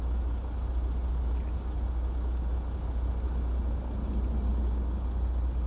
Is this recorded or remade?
recorded